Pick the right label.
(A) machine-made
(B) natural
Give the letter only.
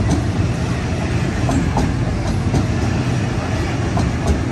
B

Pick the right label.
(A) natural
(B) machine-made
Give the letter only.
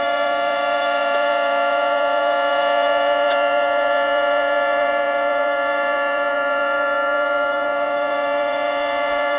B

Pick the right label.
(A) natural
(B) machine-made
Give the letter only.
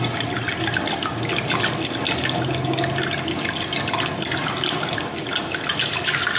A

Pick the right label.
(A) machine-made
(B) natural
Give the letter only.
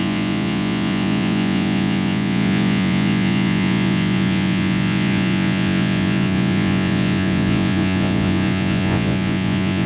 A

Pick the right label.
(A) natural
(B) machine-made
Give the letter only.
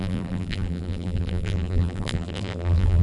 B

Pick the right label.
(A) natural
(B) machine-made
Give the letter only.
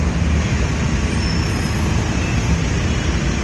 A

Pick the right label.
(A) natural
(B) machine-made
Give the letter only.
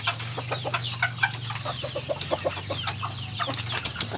A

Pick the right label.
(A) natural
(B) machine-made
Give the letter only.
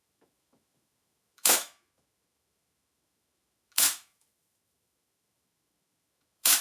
B